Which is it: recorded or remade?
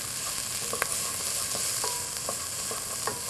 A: recorded